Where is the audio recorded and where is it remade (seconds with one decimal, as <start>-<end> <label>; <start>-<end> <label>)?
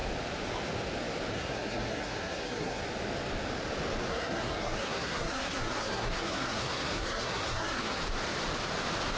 0.0-1.3 recorded; 1.3-2.8 remade; 2.8-4.1 recorded; 4.1-8.0 remade; 8.0-9.2 recorded